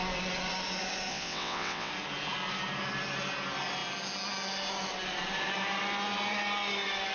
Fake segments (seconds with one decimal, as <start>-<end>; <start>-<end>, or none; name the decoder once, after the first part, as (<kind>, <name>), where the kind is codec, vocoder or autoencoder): 1.1-1.9 (vocoder, WaveNeXt)